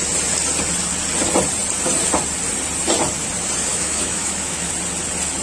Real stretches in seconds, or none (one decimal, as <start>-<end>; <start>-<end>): 0.0-3.7; 4.7-5.4